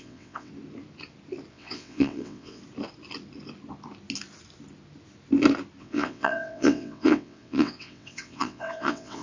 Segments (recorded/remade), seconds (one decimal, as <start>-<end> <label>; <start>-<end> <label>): 0.0-0.5 remade; 0.5-1.5 recorded; 1.5-2.6 remade; 2.6-5.8 recorded; 5.8-9.2 remade